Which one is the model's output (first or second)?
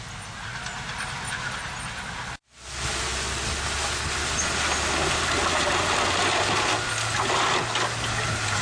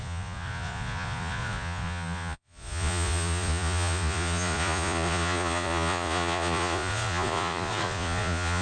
second